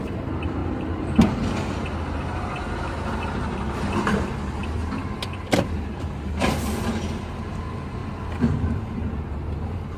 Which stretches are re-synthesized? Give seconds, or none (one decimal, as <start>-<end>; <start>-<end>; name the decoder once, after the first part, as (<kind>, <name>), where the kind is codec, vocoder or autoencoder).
0.0-0.6 (vocoder, BigVGAN v2); 2.6-8.0; 9.2-10.0